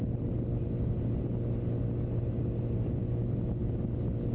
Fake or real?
real